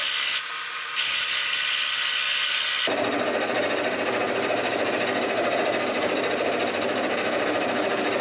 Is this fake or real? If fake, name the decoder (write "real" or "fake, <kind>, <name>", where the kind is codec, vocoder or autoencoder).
real